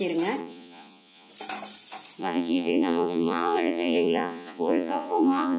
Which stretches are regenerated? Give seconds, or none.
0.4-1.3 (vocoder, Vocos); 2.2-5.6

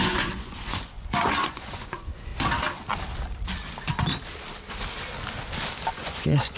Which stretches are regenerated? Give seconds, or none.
0.0-2.3 (vocoder, Vocos); 5.9-6.6

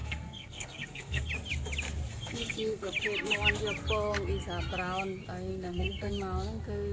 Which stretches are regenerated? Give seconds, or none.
0.0-1.3 (codec, SNAC); 2.1-2.9; 5.5-6.1